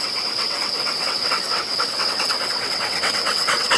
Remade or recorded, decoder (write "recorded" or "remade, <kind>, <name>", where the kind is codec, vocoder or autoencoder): remade, vocoder, WaveNeXt